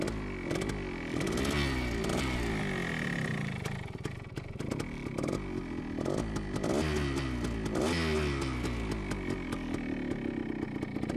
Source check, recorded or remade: recorded